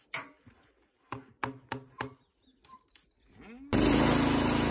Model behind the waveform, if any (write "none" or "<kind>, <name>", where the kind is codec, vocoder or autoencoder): none